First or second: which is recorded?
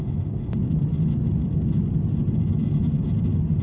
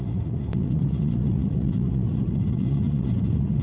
first